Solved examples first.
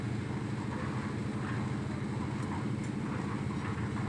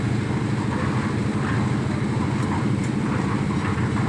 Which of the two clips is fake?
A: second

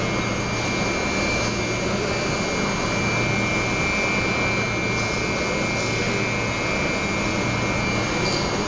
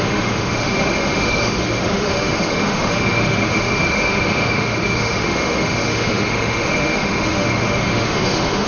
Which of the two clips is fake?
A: second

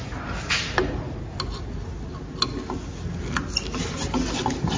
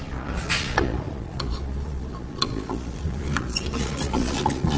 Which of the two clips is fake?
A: second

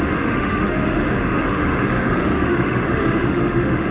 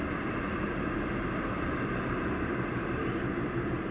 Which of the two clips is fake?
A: first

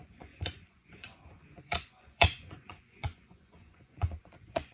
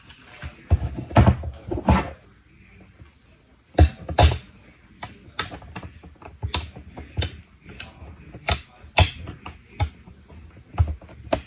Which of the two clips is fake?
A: first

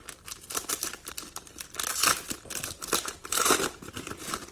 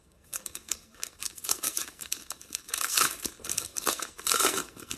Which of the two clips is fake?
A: second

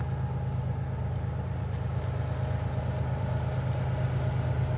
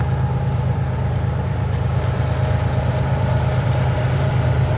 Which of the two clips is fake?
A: second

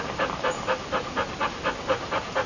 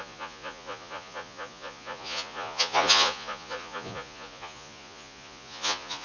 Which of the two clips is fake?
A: second